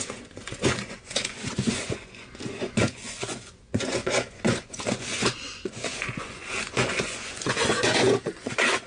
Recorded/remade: remade